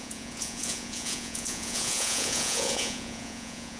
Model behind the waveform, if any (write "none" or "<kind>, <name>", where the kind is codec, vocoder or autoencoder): vocoder, Vocos